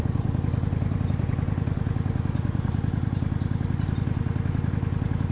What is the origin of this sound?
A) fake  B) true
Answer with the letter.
B